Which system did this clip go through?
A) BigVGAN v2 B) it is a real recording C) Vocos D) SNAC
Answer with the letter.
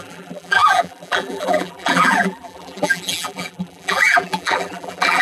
A